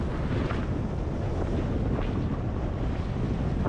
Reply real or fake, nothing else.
real